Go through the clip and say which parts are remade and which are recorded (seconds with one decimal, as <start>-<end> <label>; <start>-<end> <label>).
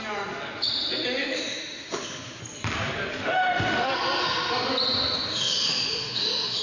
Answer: 0.0-1.2 recorded; 1.2-2.4 remade; 2.4-3.1 recorded; 3.1-3.9 remade; 3.9-5.3 recorded; 5.3-6.6 remade